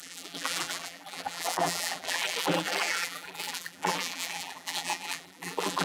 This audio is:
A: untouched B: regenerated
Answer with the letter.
B